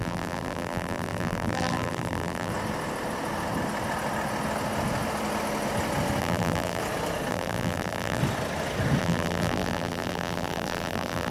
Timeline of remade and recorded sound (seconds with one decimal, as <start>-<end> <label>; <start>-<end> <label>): 0.0-2.5 remade; 2.5-6.2 recorded; 6.2-6.8 remade; 6.8-7.3 recorded; 7.3-8.2 remade; 8.2-9.0 recorded; 9.0-11.3 remade